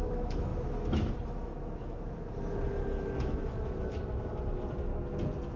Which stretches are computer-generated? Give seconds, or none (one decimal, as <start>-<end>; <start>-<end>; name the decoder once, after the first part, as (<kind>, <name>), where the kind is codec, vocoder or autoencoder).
0.0-4.9 (autoencoder, DAC-VAE)